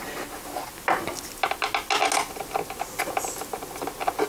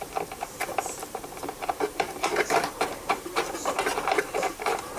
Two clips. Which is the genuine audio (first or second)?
first